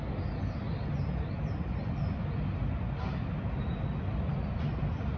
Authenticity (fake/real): real